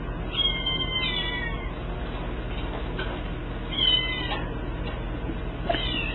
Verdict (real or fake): real